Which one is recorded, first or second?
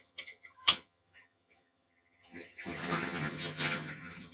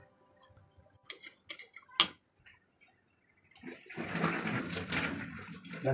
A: second